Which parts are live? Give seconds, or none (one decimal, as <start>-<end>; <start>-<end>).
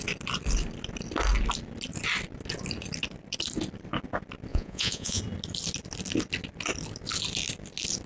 0.0-4.5; 5.2-8.1